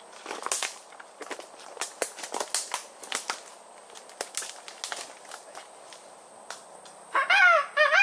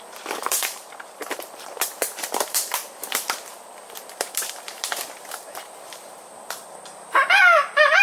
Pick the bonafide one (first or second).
first